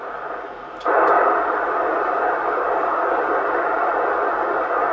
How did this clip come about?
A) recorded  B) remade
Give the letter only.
A